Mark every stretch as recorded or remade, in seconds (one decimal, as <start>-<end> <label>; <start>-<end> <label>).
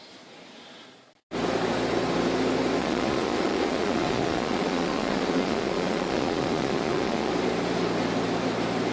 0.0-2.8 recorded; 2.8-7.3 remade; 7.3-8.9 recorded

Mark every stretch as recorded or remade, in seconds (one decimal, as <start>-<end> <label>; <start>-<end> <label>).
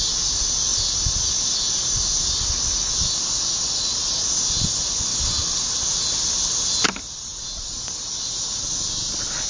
0.0-9.5 recorded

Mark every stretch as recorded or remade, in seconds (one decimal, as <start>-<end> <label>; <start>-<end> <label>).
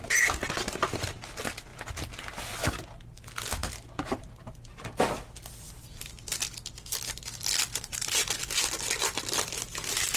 0.0-10.2 recorded